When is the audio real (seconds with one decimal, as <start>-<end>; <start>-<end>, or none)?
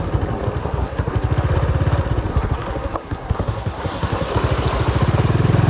0.0-0.6; 1.1-2.3; 4.3-5.7